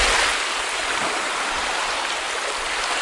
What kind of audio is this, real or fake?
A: real